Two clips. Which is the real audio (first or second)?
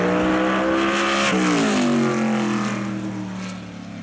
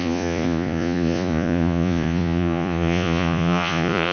first